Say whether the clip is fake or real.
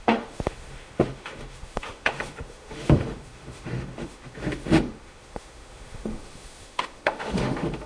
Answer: fake